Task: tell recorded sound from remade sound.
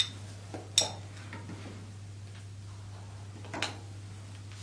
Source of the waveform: recorded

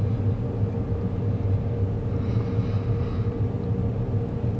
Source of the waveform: recorded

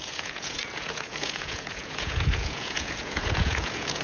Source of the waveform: remade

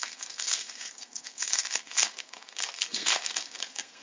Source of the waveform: remade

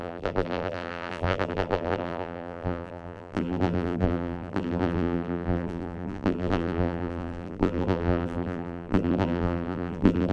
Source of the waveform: remade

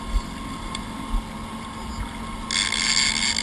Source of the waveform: recorded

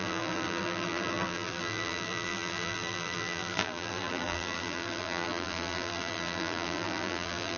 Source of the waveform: remade